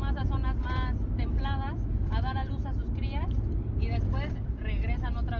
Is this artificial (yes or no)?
no